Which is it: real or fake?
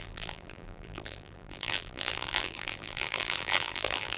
fake